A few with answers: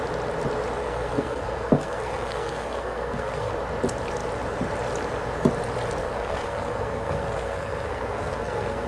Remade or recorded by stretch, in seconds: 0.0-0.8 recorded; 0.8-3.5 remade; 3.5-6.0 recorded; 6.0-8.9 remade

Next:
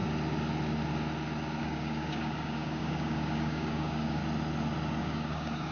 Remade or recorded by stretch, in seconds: 0.0-1.6 recorded; 1.6-4.2 remade; 4.2-5.0 recorded; 5.0-5.7 remade

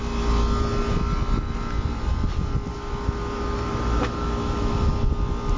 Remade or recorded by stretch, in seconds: 0.0-2.7 recorded; 2.7-4.9 remade; 4.9-5.6 recorded

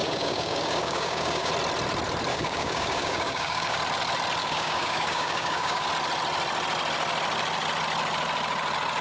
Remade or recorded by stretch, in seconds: 0.0-1.5 remade; 1.5-2.3 recorded; 2.3-3.8 remade; 3.8-4.4 recorded; 4.4-5.9 remade; 5.9-9.0 recorded

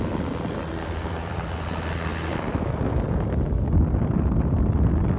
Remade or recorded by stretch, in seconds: 0.0-5.2 recorded

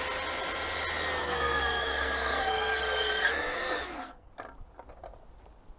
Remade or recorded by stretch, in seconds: 0.0-1.2 recorded; 1.2-4.3 remade; 4.3-5.8 recorded

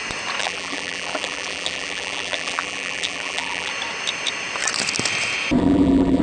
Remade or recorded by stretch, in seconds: 0.0-0.4 recorded; 0.4-3.7 remade; 3.7-5.6 recorded; 5.6-6.2 remade